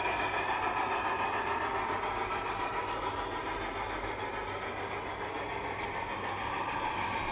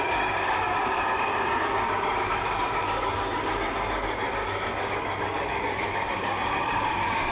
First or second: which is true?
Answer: first